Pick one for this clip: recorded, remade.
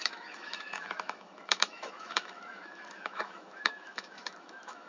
remade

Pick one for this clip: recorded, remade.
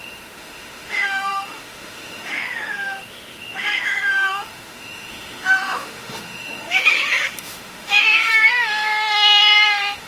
remade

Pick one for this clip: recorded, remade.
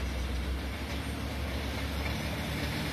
recorded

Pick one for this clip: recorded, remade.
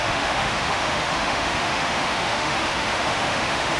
remade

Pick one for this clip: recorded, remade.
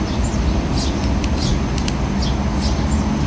recorded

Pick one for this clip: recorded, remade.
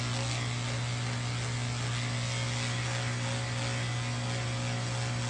recorded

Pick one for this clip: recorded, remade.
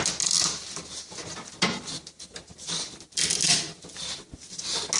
recorded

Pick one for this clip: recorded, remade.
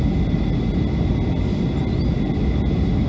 recorded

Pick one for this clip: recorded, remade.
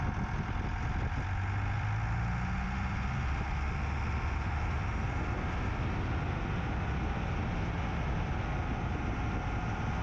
recorded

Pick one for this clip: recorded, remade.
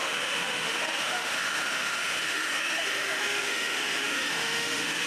remade